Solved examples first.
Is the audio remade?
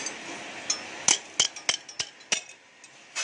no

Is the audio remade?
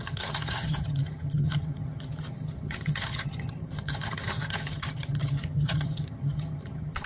yes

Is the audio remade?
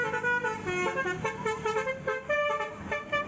no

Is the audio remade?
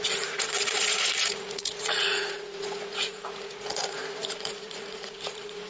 yes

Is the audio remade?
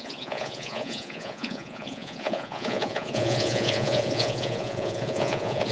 yes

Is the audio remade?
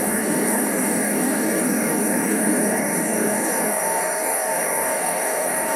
yes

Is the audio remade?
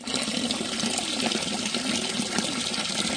no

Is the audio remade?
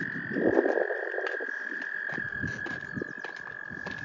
no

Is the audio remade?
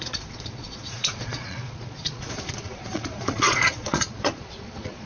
yes